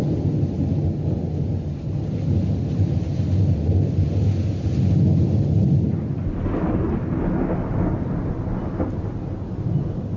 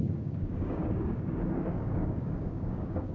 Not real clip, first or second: second